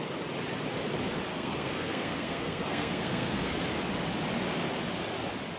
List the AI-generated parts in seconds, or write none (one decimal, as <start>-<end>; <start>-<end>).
1.3-3.6